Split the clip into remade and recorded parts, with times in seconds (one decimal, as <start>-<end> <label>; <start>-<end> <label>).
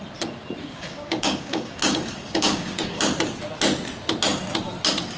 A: 0.0-0.6 recorded; 0.6-3.0 remade; 3.0-5.2 recorded